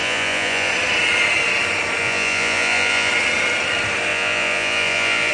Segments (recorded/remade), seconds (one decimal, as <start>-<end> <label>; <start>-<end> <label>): 0.0-0.7 remade; 0.7-2.0 recorded; 2.0-3.1 remade; 3.1-4.1 recorded; 4.1-5.3 remade